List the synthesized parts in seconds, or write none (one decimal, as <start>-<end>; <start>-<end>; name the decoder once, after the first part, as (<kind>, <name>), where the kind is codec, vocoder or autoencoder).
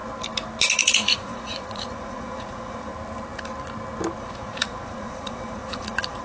0.8-2.9 (vocoder, Vocos); 4.2-6.2